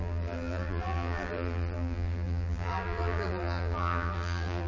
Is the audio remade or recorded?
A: remade